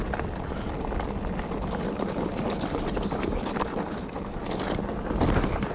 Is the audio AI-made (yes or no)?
no